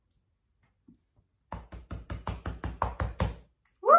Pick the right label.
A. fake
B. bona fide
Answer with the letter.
B